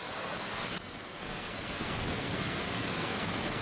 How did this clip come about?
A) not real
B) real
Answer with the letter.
A